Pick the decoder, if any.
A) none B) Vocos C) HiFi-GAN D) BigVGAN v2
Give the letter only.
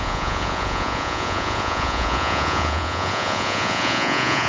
B